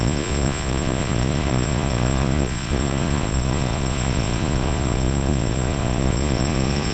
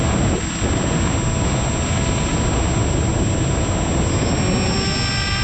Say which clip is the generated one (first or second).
first